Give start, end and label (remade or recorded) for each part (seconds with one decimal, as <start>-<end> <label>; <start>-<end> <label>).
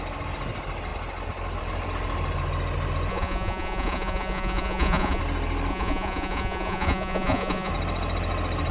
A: 0.0-3.1 recorded; 3.1-5.2 remade; 5.2-5.7 recorded; 5.7-7.7 remade; 7.7-8.7 recorded